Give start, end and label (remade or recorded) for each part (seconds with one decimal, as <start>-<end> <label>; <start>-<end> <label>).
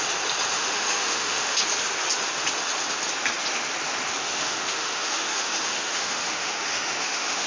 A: 0.0-0.5 recorded; 0.5-1.6 remade; 1.6-4.2 recorded; 4.2-7.5 remade